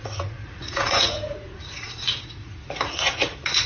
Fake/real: fake